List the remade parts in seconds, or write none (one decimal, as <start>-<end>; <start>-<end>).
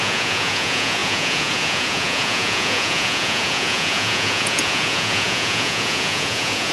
0.0-6.7